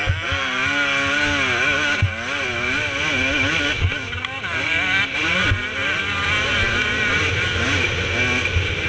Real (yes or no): yes